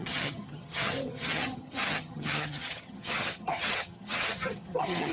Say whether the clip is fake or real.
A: fake